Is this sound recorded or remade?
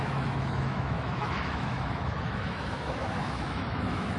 remade